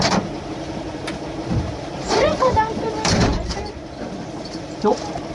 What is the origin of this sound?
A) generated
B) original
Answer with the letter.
A